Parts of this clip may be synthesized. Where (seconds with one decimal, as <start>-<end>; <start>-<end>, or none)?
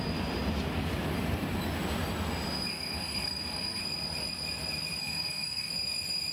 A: 2.7-3.8; 5.0-5.7